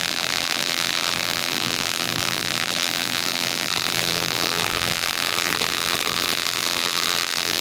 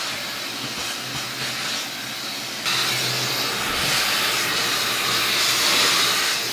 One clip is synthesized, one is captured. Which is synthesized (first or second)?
first